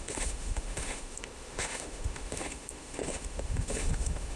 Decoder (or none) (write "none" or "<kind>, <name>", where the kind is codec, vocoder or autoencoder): autoencoder, DAC-VAE